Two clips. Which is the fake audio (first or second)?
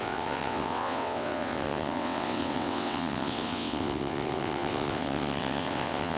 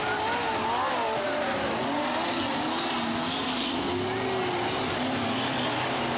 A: first